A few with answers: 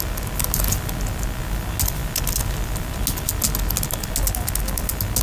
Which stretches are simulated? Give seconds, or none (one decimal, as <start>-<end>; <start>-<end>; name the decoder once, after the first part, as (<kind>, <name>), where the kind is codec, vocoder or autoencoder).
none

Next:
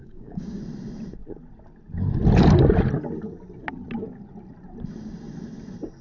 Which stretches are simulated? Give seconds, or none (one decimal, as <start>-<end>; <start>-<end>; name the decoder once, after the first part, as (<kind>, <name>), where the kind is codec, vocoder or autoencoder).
0.0-0.6 (codec, DAC)

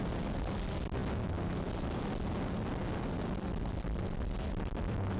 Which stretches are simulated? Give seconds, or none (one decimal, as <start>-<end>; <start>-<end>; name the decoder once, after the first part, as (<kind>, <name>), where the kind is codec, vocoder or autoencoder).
none

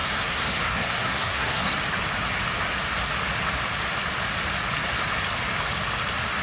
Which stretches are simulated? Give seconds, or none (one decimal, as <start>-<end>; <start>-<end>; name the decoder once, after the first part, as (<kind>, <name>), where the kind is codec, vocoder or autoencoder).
0.0-1.7 (codec, SNAC)